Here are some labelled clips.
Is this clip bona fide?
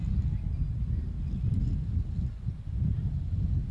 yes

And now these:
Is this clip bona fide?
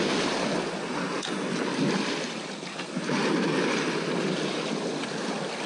yes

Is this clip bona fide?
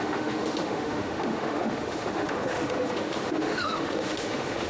no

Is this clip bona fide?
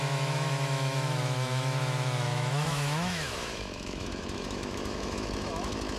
no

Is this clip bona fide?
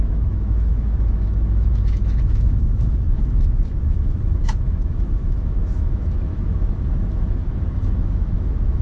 no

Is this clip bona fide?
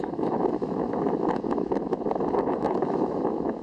no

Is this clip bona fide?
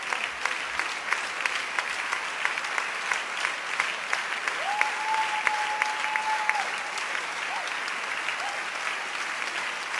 yes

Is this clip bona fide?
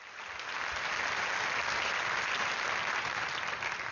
yes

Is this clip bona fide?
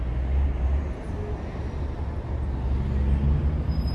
yes